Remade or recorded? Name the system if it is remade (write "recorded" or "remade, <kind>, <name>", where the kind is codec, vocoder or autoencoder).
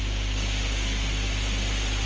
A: recorded